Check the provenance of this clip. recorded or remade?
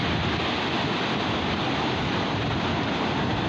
recorded